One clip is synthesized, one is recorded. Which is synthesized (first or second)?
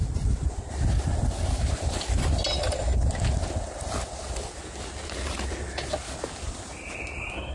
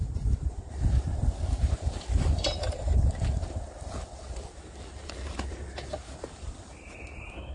second